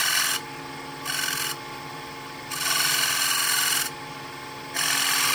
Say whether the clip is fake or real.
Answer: real